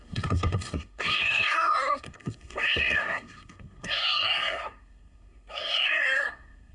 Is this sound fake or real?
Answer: fake